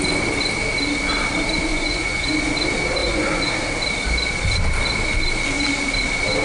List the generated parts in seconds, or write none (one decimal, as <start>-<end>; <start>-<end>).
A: 1.7-2.4; 3.0-3.5